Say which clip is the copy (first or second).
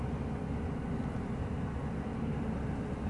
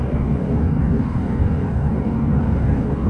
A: second